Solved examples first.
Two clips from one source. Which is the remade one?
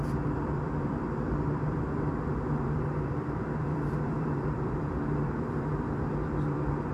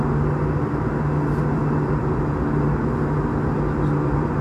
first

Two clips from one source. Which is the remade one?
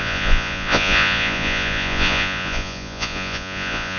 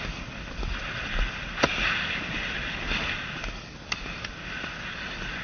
first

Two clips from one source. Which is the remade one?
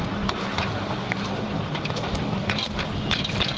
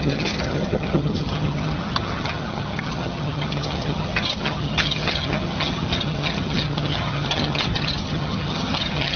second